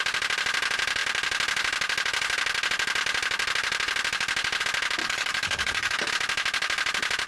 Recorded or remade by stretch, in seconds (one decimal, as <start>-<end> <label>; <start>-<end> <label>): 0.0-5.0 recorded; 5.0-6.1 remade; 6.1-7.3 recorded